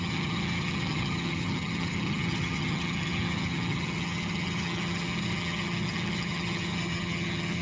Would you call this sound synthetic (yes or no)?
yes